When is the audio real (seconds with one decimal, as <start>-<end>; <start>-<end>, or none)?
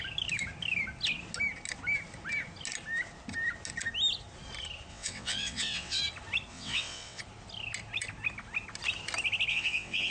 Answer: 0.0-4.9; 6.0-6.5; 7.2-9.5